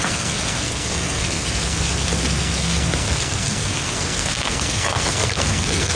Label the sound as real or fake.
fake